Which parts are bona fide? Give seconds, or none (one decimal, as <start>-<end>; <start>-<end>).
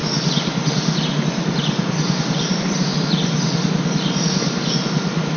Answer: 0.0-5.4